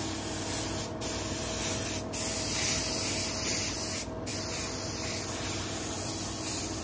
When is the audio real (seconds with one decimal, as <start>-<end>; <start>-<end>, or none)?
0.0-6.8